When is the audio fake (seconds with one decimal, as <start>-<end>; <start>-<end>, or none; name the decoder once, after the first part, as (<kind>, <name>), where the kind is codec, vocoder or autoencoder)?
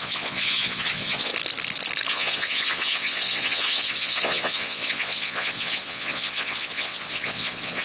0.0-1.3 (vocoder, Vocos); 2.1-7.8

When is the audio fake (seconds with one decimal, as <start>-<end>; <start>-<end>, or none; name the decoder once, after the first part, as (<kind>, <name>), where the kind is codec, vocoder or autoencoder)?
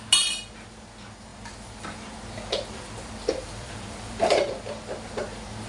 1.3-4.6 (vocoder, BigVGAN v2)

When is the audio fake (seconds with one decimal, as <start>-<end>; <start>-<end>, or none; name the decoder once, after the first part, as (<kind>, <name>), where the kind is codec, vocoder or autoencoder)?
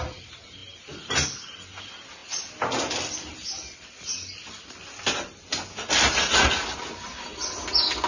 none